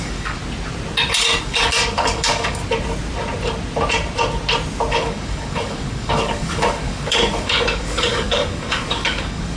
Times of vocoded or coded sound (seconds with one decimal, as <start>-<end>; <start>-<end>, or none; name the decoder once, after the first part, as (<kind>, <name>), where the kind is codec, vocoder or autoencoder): 0.0-0.4 (codec, DAC); 1.4-2.6; 4.9-9.6